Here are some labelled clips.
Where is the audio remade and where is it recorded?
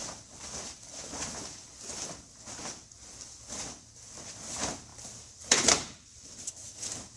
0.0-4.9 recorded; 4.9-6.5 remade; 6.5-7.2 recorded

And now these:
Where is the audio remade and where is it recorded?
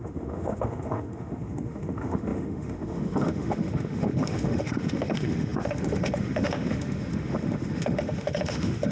0.0-8.9 remade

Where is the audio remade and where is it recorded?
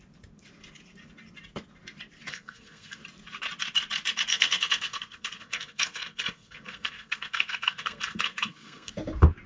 0.0-2.3 recorded; 2.3-3.0 remade; 3.0-4.3 recorded; 4.3-8.9 remade; 8.9-9.5 recorded